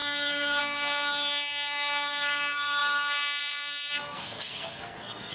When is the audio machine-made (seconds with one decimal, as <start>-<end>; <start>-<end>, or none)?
0.0-5.3